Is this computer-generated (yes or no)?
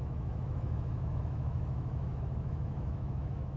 yes